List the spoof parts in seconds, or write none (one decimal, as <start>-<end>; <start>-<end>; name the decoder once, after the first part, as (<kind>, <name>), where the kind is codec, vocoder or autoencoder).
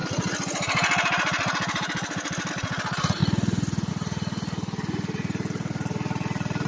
0.0-3.2 (vocoder, BigVGAN v2); 3.9-6.7